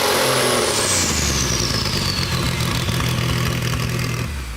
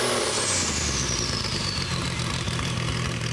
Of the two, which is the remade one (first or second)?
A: second